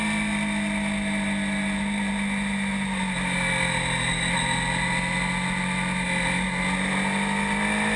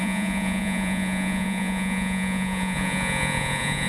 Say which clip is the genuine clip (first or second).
first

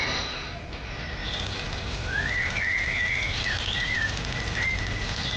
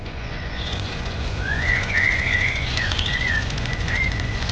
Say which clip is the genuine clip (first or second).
first